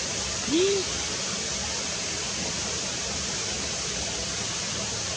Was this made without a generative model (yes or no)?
yes